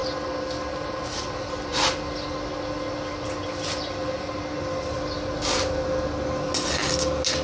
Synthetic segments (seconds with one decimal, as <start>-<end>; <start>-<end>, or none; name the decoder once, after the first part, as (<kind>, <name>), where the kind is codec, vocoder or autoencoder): none